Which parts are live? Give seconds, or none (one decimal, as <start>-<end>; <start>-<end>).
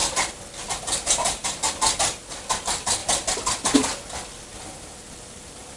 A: 0.0-0.7; 1.4-2.6; 3.0-4.6